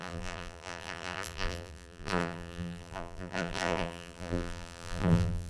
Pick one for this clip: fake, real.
fake